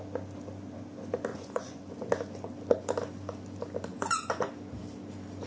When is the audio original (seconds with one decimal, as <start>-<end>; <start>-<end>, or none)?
0.0-1.3; 1.9-3.9; 4.5-5.5